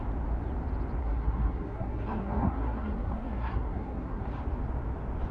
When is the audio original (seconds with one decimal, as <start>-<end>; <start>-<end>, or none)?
0.0-1.0; 4.2-5.3